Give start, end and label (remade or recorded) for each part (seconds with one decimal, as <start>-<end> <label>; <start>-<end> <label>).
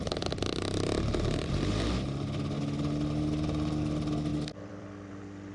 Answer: 0.0-4.3 recorded; 4.3-5.1 remade; 5.1-5.5 recorded